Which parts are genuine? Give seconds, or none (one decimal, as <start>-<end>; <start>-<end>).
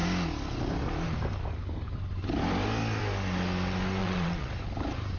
0.0-4.0; 4.5-5.2